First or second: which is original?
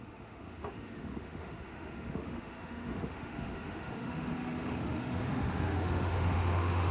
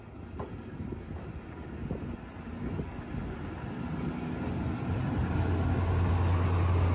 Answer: second